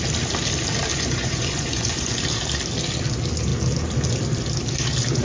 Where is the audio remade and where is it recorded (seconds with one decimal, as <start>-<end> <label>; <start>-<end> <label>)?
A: 0.0-0.9 recorded; 0.9-2.2 remade; 2.2-5.2 recorded